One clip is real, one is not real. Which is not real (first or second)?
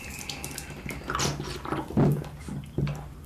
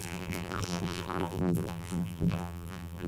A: second